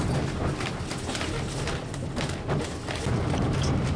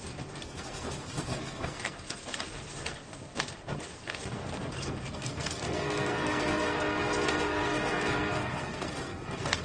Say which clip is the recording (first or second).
first